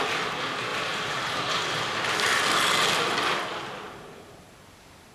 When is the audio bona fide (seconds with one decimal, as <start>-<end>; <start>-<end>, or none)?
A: 0.0-0.7; 2.4-3.5